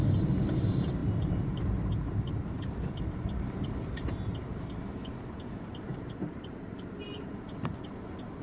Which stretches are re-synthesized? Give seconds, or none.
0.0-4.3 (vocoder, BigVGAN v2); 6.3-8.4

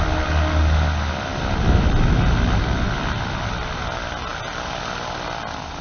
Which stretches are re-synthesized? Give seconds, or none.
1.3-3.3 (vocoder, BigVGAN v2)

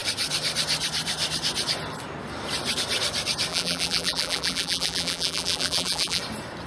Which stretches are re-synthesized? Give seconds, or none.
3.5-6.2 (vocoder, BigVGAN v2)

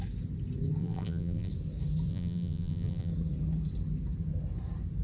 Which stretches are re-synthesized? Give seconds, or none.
0.8-1.5 (vocoder, BigVGAN v2); 2.1-3.1

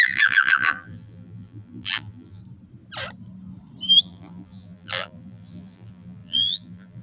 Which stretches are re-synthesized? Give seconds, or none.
0.0-2.4 (vocoder, BigVGAN v2); 4.0-7.0